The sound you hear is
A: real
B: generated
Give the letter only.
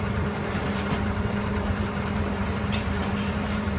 B